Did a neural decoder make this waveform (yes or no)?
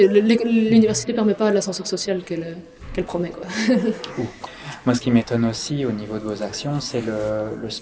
no